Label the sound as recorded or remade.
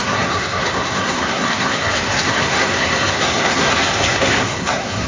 remade